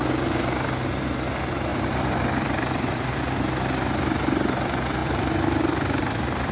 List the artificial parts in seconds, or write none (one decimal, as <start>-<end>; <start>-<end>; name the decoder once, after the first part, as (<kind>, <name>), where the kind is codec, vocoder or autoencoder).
1.7-3.2 (vocoder, BigVGAN v2); 5.0-6.5